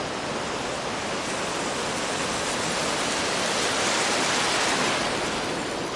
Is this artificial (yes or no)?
no